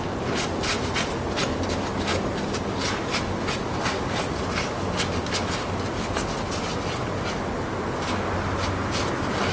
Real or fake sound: real